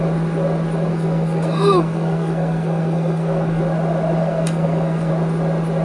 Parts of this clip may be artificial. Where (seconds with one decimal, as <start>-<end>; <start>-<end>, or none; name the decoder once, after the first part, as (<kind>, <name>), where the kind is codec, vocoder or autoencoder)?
0.9-3.6 (codec, SNAC); 4.2-5.1

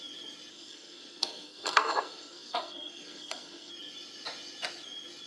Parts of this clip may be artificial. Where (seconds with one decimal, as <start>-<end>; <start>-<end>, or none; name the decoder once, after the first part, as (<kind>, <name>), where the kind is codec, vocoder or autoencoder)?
0.5-3.7 (codec, SNAC)

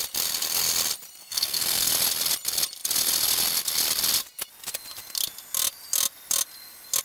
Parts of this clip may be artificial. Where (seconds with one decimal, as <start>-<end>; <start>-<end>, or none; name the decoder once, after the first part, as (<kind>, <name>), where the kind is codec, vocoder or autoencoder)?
1.2-1.9 (codec, SNAC)

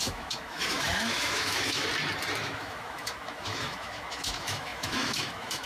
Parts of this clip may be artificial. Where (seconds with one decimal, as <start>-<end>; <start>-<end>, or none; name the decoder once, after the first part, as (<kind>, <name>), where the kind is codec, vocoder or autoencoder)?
0.0-1.9 (autoencoder, DAC-VAE); 2.4-5.7

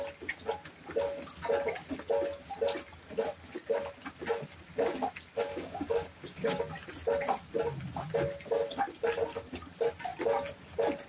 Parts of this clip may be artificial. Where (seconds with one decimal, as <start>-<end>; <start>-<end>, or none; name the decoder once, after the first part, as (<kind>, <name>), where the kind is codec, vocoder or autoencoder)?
5.5-6.6 (codec, DAC)